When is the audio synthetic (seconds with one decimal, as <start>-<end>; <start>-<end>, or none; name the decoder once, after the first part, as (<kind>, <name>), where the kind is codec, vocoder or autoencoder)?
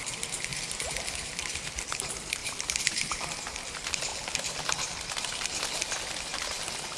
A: 2.4-3.3 (vocoder, BigVGAN v2)